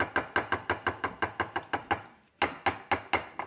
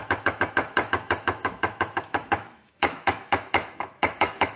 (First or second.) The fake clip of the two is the second